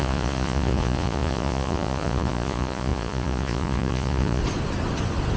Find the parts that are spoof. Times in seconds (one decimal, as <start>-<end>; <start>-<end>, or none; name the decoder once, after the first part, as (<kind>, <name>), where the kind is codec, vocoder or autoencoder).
0.0-4.4 (vocoder, Vocos)